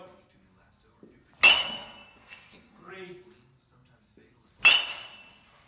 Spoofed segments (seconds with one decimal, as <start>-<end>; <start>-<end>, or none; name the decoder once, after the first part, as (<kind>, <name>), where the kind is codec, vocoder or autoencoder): 1.6-2.9 (codec, SNAC)